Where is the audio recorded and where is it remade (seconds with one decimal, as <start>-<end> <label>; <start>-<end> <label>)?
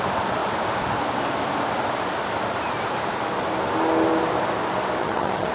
0.0-5.0 recorded; 5.0-5.5 remade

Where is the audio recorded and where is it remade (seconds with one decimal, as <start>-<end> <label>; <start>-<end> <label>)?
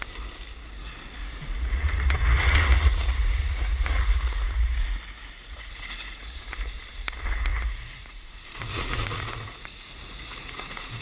0.0-1.2 recorded; 1.2-6.4 remade; 6.4-7.5 recorded; 7.5-11.0 remade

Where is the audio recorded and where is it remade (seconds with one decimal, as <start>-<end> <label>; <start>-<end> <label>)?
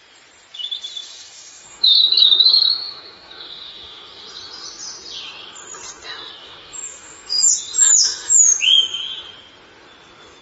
0.0-1.0 recorded; 1.0-4.2 remade; 4.2-6.4 recorded; 6.4-7.5 remade; 7.5-7.9 recorded; 7.9-8.6 remade; 8.6-10.4 recorded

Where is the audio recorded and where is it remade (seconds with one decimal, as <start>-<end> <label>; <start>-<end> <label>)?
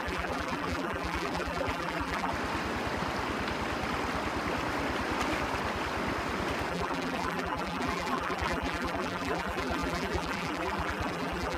0.0-2.3 remade; 2.3-6.7 recorded; 6.7-11.6 remade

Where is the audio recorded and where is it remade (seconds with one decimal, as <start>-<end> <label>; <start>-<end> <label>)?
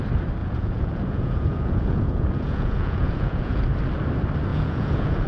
0.0-0.4 recorded; 0.4-3.6 remade; 3.6-4.5 recorded; 4.5-5.3 remade